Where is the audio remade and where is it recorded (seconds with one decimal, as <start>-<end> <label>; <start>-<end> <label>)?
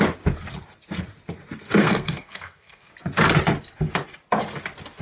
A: 0.0-1.8 recorded; 1.8-2.9 remade; 2.9-5.0 recorded